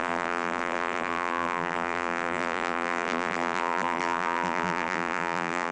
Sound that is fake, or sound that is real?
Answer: fake